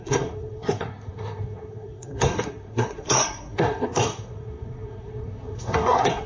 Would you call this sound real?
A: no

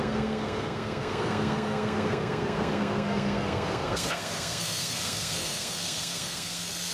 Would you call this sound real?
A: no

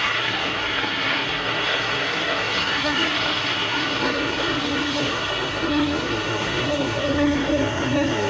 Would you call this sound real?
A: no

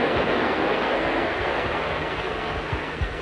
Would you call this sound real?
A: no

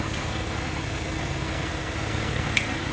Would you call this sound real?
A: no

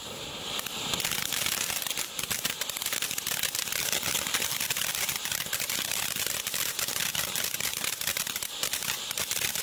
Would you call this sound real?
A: yes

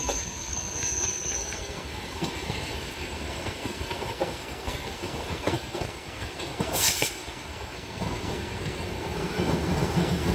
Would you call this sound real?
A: no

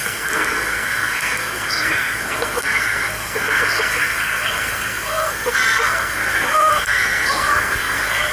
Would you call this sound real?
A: no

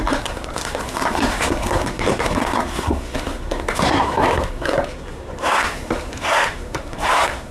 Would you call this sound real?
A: no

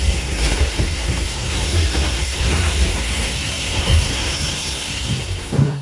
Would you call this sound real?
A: no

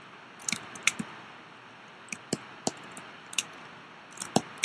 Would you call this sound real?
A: yes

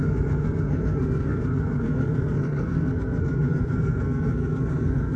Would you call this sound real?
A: no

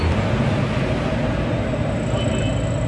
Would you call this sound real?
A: yes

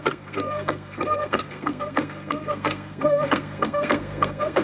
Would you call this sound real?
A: no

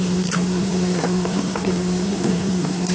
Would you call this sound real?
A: no